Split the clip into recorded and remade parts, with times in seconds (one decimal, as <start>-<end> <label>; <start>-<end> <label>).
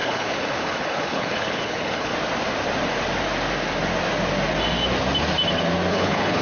0.0-2.1 remade; 2.1-5.9 recorded; 5.9-6.4 remade